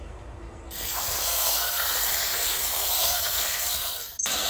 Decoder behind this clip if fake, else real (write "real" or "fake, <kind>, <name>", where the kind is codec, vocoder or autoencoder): fake, codec, SNAC